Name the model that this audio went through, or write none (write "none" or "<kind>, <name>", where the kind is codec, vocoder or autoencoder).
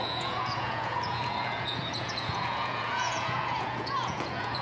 vocoder, Vocos